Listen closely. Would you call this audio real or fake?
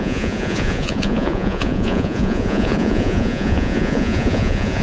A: fake